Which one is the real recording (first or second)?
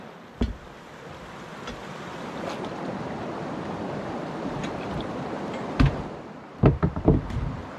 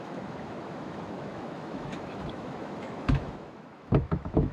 first